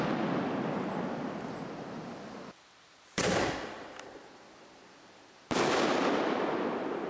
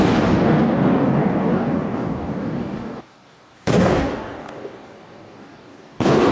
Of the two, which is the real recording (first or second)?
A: first